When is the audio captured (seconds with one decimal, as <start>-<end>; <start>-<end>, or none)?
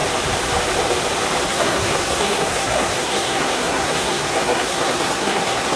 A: 0.0-1.5